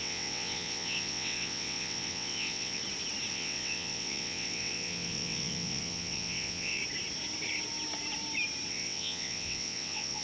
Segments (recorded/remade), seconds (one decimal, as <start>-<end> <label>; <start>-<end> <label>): 0.0-2.8 remade; 2.8-3.3 recorded; 3.3-6.8 remade; 6.8-8.7 recorded; 8.7-10.2 remade

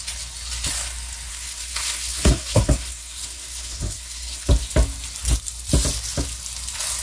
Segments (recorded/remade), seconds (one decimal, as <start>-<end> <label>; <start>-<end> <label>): 0.0-1.3 recorded; 1.3-4.5 remade; 4.5-7.0 recorded

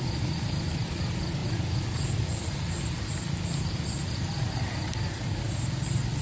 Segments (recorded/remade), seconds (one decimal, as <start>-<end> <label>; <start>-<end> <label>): 0.0-6.2 recorded

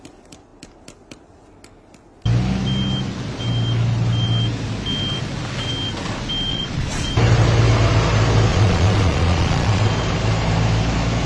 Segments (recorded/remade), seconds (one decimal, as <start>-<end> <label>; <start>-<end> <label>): 0.0-6.5 recorded; 6.5-7.1 remade; 7.1-8.5 recorded; 8.5-9.9 remade; 9.9-11.3 recorded

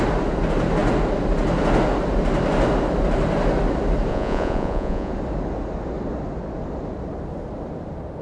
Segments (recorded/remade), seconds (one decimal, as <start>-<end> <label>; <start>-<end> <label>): 0.0-4.1 recorded; 4.1-5.1 remade; 5.1-8.2 recorded

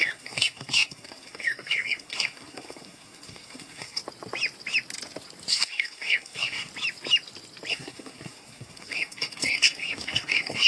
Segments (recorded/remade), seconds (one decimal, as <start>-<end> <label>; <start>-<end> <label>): 0.0-4.0 remade; 4.0-5.5 recorded; 5.5-6.7 remade; 6.7-7.7 recorded; 7.7-10.7 remade